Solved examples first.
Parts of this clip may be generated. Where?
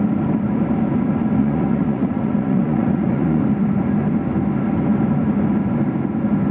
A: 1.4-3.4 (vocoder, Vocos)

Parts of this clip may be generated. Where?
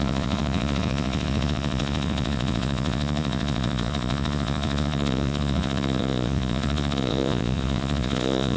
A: 0.0-8.6 (vocoder, Vocos)